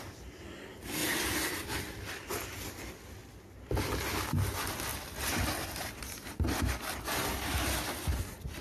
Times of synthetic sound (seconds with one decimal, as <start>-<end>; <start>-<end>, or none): 1.0-2.3; 3.2-4.1